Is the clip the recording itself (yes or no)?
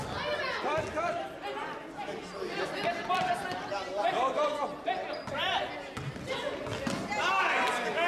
yes